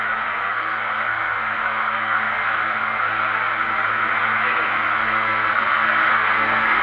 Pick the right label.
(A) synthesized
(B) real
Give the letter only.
A